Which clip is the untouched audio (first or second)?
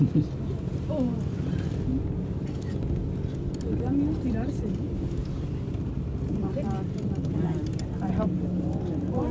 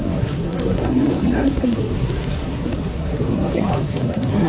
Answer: first